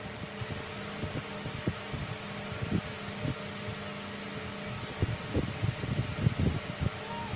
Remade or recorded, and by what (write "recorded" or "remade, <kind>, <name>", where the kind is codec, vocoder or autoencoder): recorded